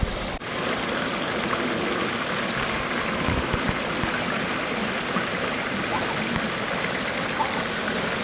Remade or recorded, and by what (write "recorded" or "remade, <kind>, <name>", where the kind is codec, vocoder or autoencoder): recorded